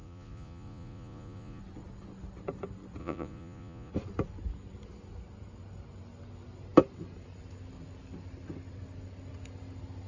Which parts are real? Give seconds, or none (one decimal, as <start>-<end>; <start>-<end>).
1.6-3.0; 3.9-10.1